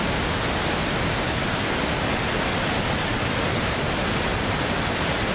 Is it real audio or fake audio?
real